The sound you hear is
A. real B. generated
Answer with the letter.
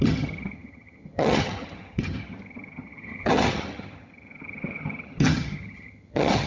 B